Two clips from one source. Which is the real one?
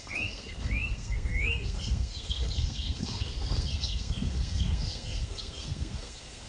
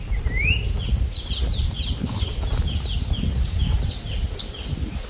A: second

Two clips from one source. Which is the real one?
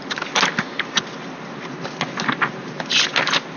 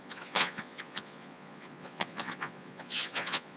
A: first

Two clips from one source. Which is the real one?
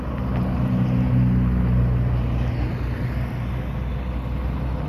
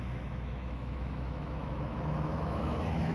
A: first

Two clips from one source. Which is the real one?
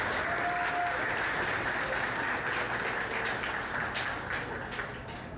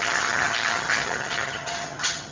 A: first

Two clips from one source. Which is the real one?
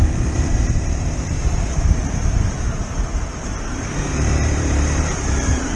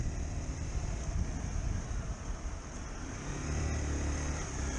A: second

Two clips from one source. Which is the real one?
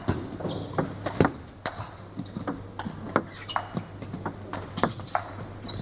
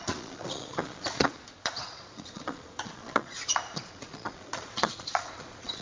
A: first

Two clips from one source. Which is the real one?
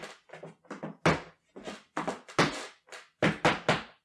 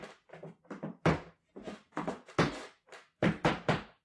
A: first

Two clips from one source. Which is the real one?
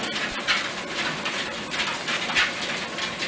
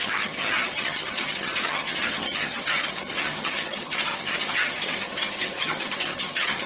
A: first